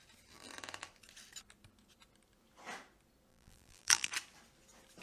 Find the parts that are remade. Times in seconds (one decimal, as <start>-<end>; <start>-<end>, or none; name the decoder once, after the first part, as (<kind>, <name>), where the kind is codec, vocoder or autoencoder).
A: 3.3-4.1 (vocoder, BigVGAN v2)